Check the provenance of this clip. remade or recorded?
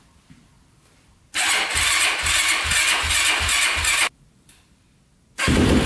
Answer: recorded